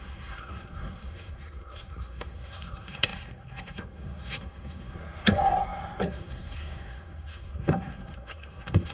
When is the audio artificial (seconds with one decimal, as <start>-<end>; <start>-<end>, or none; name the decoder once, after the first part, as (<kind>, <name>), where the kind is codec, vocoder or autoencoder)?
0.0-8.9 (codec, SNAC)